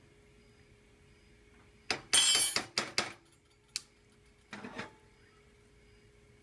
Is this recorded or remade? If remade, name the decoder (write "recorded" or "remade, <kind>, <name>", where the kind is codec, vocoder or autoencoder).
recorded